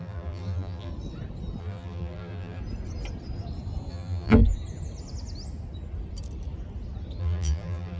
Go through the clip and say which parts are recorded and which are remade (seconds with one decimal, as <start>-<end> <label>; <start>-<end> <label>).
0.0-0.9 remade; 0.9-1.6 recorded; 1.6-2.6 remade; 2.6-3.9 recorded; 3.9-4.4 remade; 4.4-7.2 recorded; 7.2-8.0 remade